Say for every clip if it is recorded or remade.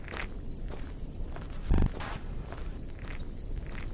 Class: recorded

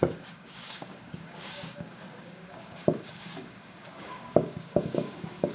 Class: remade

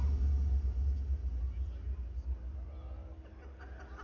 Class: recorded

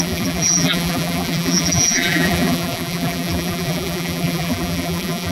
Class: remade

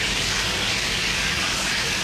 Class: remade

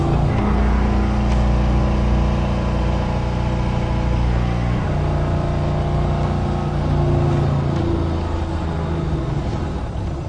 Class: recorded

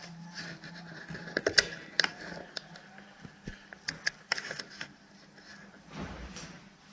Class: recorded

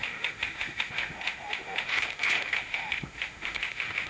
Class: remade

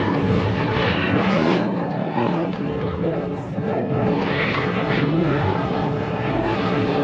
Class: remade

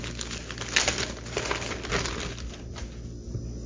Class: recorded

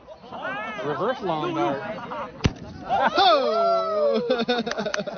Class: recorded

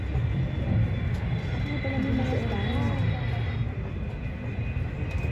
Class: recorded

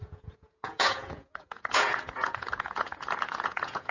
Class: remade